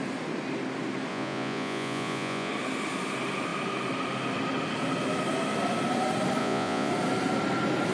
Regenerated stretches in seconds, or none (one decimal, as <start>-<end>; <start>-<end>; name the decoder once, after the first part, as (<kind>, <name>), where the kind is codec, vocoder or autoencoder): 1.1-2.5 (vocoder, Vocos); 6.4-6.9